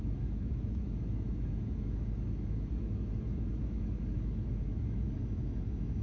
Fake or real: fake